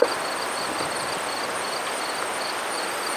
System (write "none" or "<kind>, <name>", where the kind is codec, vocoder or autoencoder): none